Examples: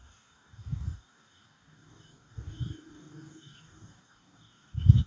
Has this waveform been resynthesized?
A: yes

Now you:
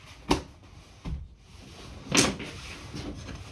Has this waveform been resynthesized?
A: no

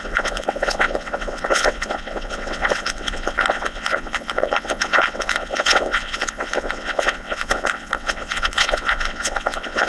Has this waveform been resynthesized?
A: yes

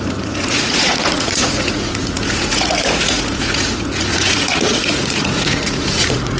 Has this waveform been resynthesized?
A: yes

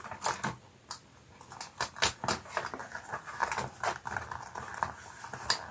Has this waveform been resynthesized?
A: no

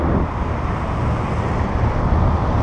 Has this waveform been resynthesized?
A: no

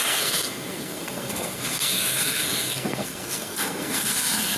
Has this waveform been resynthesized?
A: yes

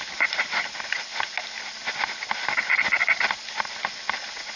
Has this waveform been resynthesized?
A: no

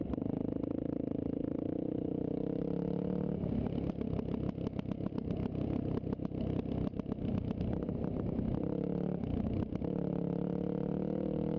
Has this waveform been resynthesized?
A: no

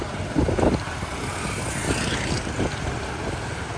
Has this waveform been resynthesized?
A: no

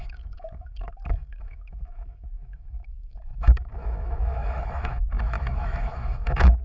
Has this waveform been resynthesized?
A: yes